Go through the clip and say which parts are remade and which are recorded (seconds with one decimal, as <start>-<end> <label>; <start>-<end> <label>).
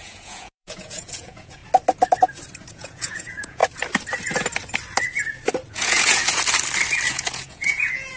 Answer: 0.0-1.6 remade; 1.6-2.7 recorded; 2.7-3.6 remade; 3.6-5.7 recorded; 5.7-6.2 remade; 6.2-7.1 recorded; 7.1-8.2 remade